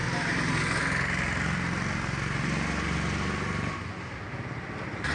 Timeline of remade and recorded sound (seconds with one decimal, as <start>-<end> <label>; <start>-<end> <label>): 0.0-5.1 recorded